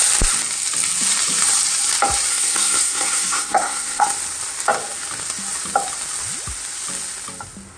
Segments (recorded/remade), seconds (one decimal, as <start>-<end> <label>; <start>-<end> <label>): 0.0-2.3 recorded; 2.3-4.0 remade; 4.0-7.8 recorded